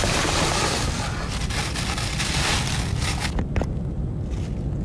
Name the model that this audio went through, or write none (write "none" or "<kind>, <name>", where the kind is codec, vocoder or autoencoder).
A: none